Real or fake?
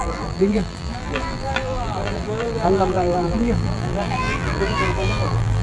fake